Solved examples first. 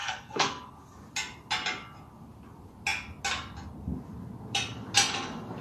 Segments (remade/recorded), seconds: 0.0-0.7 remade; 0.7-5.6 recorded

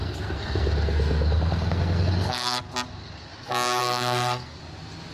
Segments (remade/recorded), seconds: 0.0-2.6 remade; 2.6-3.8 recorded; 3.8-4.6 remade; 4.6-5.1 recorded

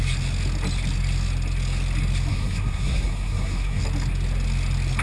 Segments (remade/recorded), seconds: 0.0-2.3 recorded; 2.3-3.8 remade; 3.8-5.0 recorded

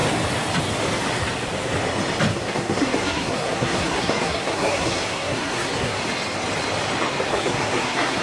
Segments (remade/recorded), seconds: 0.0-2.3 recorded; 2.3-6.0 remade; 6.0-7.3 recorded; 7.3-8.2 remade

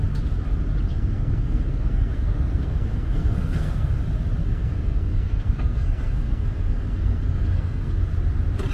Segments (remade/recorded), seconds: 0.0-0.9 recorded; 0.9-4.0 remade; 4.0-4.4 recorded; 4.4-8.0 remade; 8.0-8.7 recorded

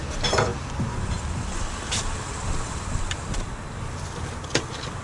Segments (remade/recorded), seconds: 0.0-5.0 recorded

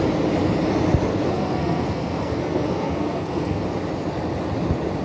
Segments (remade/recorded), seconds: 0.0-1.1 recorded; 1.1-3.6 remade; 3.6-5.0 recorded